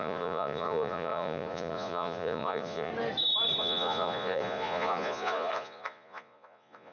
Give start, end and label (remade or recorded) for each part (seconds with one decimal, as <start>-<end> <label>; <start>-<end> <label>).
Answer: 0.0-2.9 remade; 2.9-3.6 recorded; 3.6-6.9 remade